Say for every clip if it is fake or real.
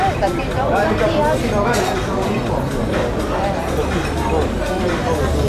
real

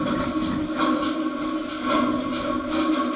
real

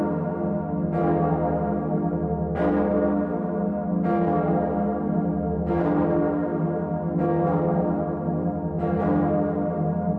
real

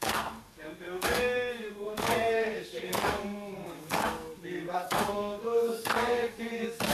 fake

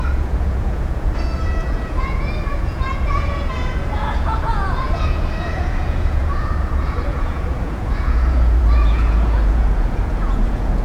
fake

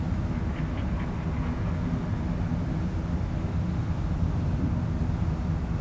real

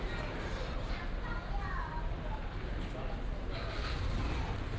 real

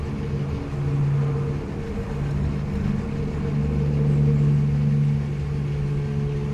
real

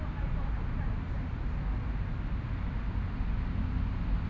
real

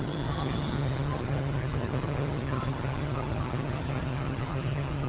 fake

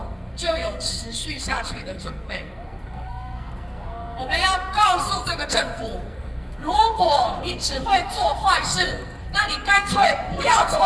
fake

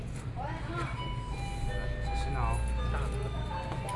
real